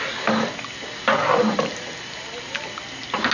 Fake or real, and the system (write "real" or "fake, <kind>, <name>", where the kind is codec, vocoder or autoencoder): real